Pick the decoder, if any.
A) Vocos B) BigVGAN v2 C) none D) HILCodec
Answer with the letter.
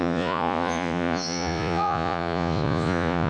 A